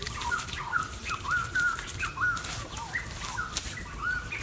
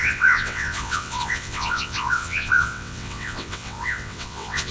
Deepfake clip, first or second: second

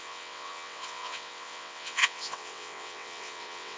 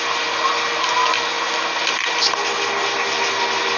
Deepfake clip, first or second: first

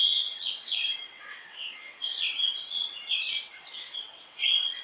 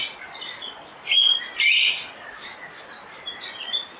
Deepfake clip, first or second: first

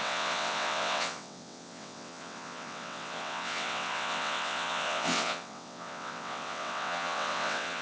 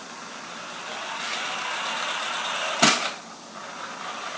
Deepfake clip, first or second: first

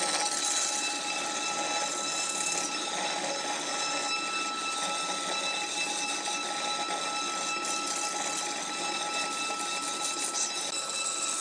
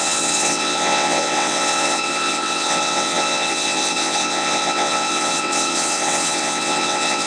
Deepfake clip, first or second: second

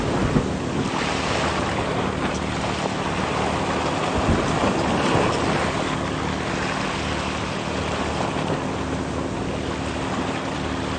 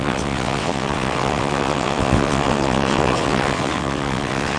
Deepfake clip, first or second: second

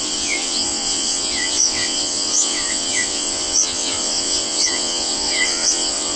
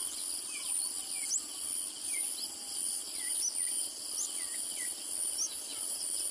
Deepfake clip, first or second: first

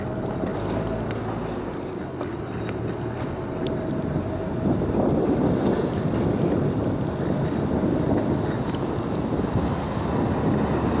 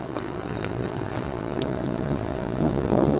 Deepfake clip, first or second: second